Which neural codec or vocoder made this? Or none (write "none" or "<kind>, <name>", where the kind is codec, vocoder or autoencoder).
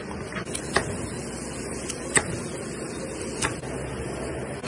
none